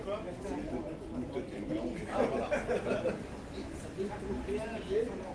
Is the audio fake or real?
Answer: real